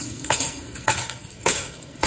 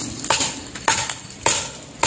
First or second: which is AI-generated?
first